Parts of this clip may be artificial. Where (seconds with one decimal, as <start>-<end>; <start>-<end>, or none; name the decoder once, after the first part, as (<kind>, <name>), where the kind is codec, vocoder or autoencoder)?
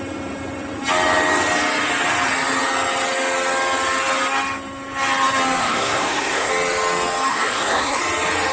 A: 5.6-6.5 (codec, SNAC); 7.3-8.0